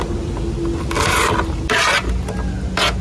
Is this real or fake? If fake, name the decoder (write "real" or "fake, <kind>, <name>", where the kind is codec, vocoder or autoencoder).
real